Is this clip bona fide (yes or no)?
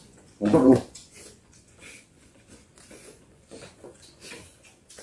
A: no